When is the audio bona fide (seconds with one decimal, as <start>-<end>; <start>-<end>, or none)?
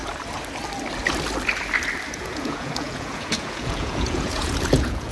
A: 0.0-2.1